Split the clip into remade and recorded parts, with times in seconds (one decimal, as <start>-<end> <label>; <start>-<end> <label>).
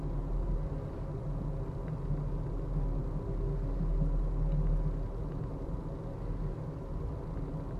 0.0-7.8 recorded